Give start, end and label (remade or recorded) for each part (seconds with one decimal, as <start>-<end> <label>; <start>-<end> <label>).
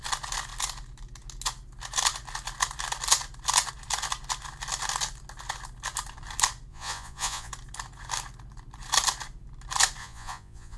0.0-6.7 recorded; 6.7-7.5 remade; 7.5-10.0 recorded; 10.0-10.8 remade